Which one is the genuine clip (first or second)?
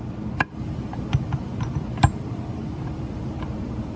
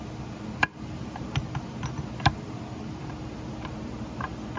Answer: second